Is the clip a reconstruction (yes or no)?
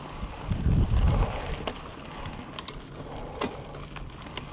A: no